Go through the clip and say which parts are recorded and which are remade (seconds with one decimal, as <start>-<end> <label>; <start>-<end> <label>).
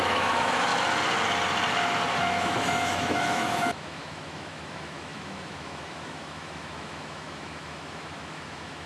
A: 0.0-0.7 remade; 0.7-2.2 recorded; 2.2-8.9 remade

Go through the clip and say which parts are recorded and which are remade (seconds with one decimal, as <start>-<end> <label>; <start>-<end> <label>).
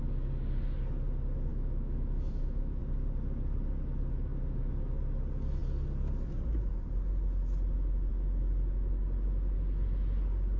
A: 0.0-1.5 recorded; 1.5-2.8 remade; 2.8-10.6 recorded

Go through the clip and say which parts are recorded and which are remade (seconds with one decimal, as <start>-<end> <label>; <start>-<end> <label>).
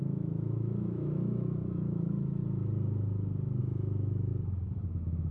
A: 0.0-2.4 remade; 2.4-3.6 recorded; 3.6-4.3 remade; 4.3-4.8 recorded; 4.8-5.3 remade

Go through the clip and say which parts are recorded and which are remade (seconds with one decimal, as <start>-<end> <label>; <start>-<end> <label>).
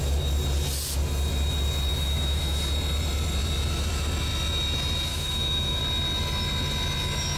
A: 0.0-1.9 recorded; 1.9-2.6 remade; 2.6-5.1 recorded; 5.1-5.8 remade; 5.8-7.4 recorded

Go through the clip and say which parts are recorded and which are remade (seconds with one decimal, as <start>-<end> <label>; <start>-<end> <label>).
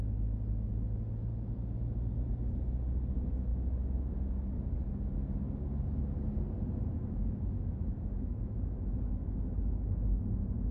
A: 0.0-6.9 recorded; 6.9-10.2 remade; 10.2-10.7 recorded